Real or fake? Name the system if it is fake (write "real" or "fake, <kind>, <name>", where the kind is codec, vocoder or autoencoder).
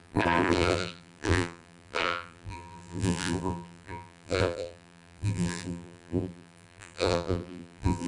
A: fake, vocoder, BigVGAN v2